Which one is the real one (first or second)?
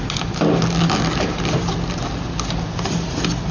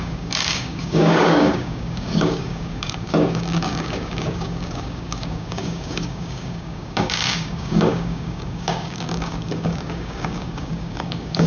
first